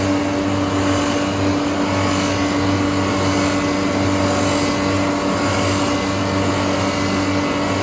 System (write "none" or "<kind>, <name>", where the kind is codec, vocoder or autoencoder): none